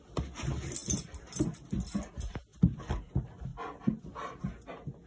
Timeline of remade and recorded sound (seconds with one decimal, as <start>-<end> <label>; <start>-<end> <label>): 0.0-5.1 recorded